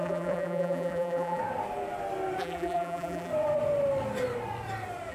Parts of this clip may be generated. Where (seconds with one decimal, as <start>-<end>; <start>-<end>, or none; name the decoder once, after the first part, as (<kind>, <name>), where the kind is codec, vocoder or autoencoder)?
0.0-1.4 (vocoder, BigVGAN v2); 2.4-3.3